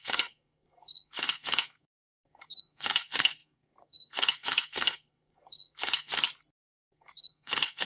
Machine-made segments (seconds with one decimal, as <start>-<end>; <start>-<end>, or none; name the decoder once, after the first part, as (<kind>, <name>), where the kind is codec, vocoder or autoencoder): 0.0-6.1 (codec, SNAC); 6.7-7.8